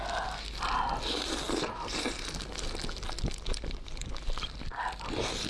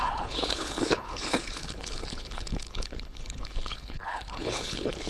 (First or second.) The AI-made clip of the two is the second